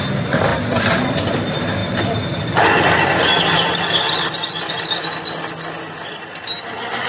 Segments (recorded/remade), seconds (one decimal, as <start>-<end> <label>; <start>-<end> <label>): 0.0-7.1 recorded